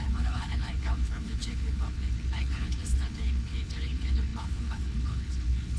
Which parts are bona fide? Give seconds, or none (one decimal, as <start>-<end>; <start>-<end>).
none